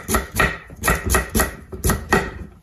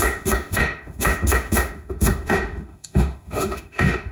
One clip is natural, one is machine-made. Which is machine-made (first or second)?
second